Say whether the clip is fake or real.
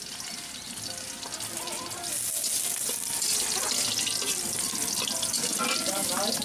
real